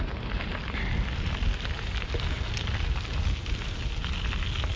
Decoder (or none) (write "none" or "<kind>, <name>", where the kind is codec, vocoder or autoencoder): none